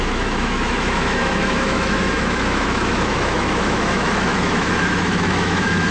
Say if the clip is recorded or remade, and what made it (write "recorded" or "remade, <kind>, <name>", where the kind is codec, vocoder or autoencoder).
remade, autoencoder, DAC-VAE